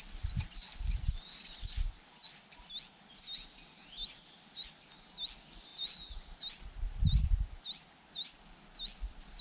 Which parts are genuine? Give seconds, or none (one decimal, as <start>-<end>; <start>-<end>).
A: 0.0-5.7; 8.4-9.4